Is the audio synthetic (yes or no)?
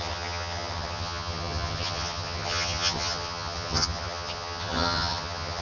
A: yes